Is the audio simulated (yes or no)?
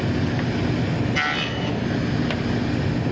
no